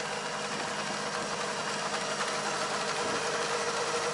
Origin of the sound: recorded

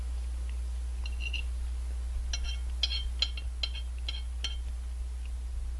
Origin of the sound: recorded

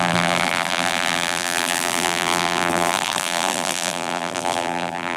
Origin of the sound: remade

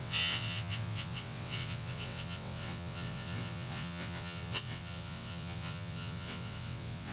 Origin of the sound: remade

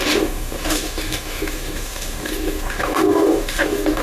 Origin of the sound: remade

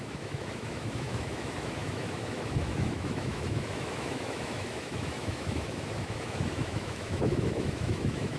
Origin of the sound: remade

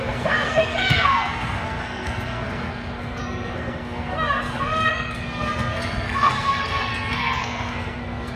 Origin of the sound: remade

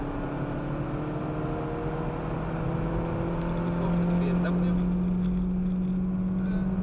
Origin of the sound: recorded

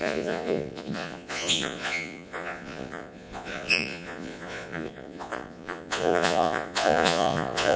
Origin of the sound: remade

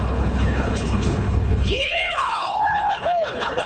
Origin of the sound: remade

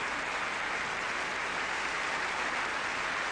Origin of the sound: recorded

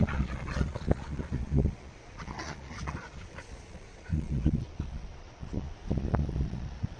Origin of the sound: remade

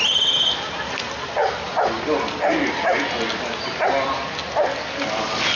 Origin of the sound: recorded